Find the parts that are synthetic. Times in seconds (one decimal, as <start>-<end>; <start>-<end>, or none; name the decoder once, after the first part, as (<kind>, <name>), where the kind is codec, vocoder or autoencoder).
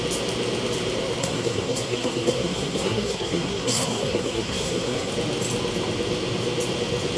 1.2-5.1 (codec, SNAC)